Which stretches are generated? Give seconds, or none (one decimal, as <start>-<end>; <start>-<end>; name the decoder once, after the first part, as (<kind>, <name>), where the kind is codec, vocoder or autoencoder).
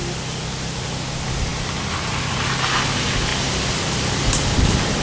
none